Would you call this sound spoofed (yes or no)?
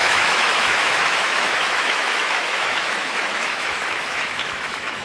yes